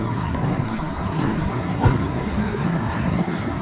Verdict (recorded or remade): remade